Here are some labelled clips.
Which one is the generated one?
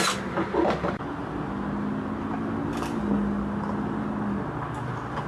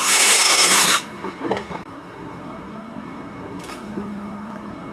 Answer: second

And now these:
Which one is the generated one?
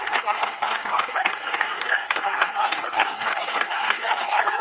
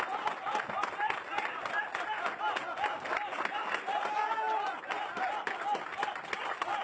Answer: first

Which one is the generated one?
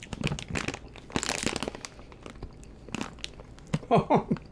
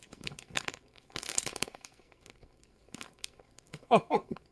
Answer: second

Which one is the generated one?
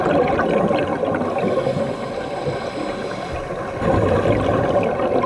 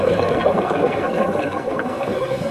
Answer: second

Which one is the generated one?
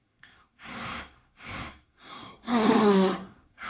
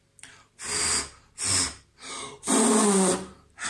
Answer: first